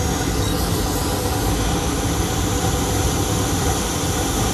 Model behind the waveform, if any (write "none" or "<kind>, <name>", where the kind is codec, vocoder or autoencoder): none